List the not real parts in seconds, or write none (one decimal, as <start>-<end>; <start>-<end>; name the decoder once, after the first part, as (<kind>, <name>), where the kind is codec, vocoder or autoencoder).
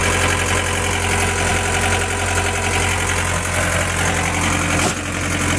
none